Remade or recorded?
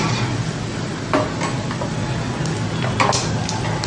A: recorded